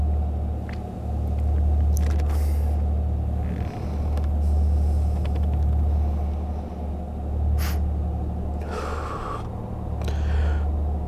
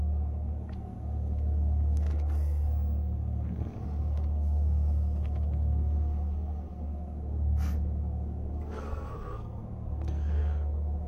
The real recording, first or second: first